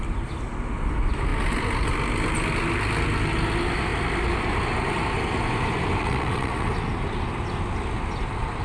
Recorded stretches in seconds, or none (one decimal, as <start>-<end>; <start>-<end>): 0.0-6.0; 6.7-8.6